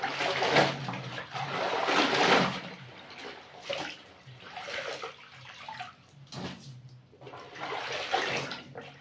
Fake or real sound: fake